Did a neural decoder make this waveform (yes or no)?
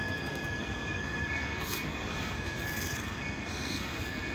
yes